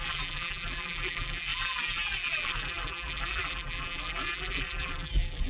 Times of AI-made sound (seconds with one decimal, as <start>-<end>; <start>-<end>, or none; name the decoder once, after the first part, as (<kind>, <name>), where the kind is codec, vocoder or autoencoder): 0.0-5.5 (vocoder, BigVGAN v2)